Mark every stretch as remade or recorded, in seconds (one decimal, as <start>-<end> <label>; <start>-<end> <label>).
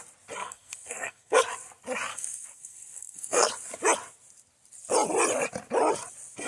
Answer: 0.0-0.4 recorded; 0.4-1.4 remade; 1.4-2.1 recorded; 2.1-3.5 remade; 3.5-6.5 recorded